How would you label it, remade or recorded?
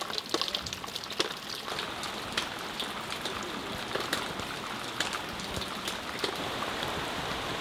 recorded